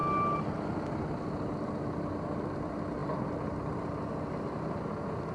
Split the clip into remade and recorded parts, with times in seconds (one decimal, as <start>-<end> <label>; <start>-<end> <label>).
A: 0.0-5.3 recorded